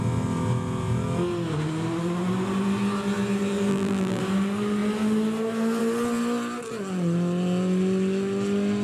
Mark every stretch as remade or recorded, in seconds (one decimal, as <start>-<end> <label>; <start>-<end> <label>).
0.0-3.7 recorded; 3.7-4.2 remade; 4.2-8.8 recorded